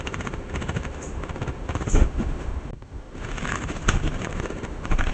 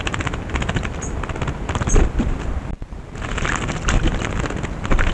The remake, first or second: first